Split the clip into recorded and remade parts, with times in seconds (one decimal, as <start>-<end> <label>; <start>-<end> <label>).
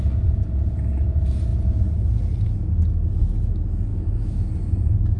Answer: 0.0-3.9 recorded; 3.9-4.5 remade; 4.5-5.2 recorded